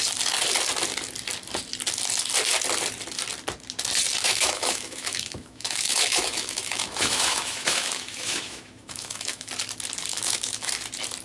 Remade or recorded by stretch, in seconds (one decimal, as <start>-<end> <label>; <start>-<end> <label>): 0.0-4.2 recorded; 4.2-9.5 remade; 9.5-10.1 recorded; 10.1-10.7 remade; 10.7-11.2 recorded